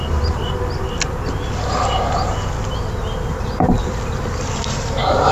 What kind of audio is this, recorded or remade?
remade